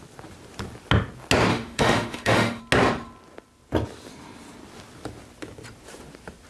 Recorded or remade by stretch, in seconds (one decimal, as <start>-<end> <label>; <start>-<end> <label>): 0.0-1.5 recorded; 1.5-2.6 remade; 2.6-6.5 recorded